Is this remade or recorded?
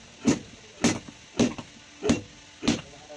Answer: recorded